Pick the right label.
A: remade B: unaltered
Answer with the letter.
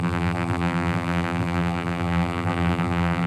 A